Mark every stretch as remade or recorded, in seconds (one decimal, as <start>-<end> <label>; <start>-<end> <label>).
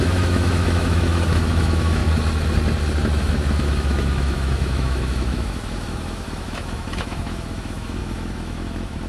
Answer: 0.0-2.0 remade; 2.0-3.2 recorded; 3.2-9.1 remade